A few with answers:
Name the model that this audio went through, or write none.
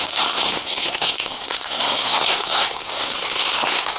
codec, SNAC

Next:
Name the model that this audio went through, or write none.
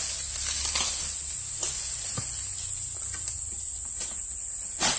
none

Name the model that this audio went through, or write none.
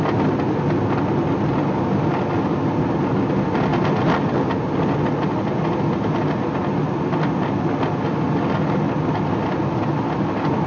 none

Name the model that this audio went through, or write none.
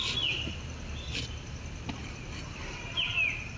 none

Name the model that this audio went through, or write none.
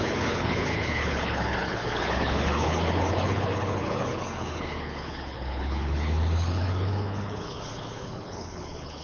codec, HILCodec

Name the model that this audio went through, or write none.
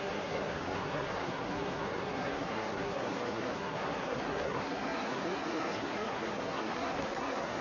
codec, SNAC